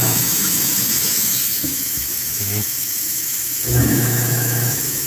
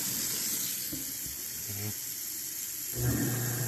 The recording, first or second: second